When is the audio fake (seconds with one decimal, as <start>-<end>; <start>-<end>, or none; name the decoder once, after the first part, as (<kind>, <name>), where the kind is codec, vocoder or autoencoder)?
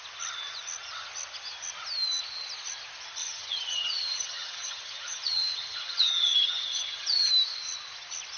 3.2-7.3 (vocoder, HiFi-GAN)